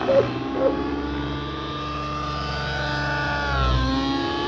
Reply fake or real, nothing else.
real